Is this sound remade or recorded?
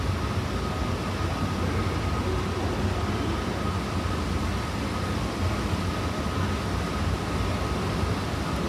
recorded